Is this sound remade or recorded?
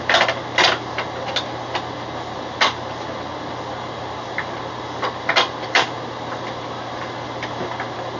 recorded